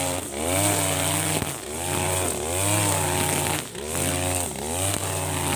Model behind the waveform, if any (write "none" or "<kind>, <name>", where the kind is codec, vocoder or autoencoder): none